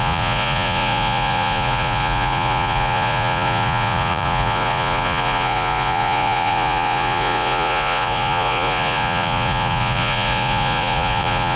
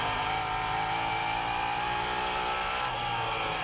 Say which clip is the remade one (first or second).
first